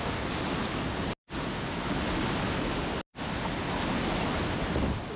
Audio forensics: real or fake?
real